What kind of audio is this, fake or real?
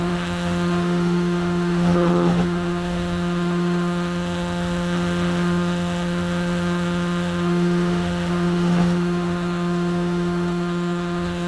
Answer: fake